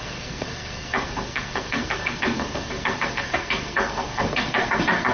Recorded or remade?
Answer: remade